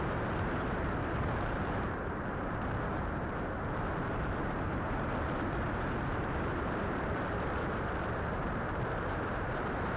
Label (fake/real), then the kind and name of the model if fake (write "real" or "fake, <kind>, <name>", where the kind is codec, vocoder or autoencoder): fake, vocoder, BigVGAN v2